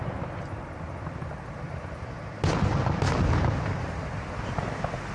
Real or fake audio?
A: real